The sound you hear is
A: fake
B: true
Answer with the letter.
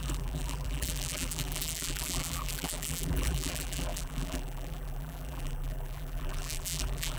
A